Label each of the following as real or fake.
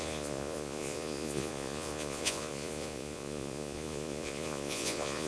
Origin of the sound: fake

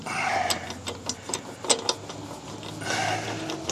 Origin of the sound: real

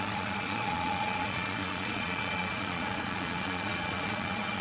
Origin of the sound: fake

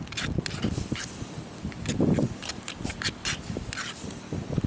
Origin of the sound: real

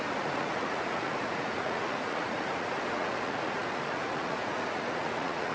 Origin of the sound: fake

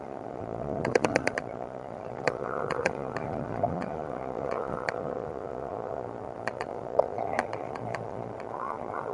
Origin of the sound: fake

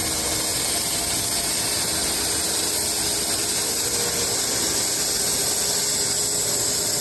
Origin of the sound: real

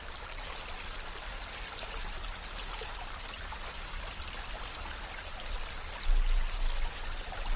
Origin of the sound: real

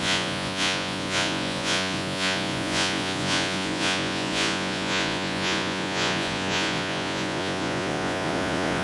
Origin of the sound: fake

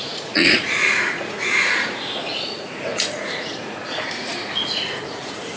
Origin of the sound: fake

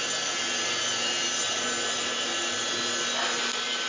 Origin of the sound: real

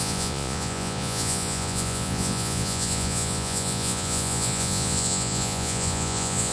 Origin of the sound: fake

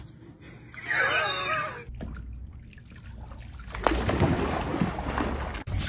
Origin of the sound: real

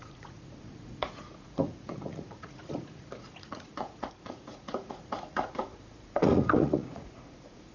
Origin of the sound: fake